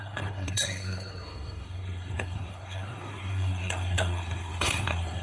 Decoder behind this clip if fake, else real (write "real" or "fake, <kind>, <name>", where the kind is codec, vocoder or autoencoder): fake, codec, SNAC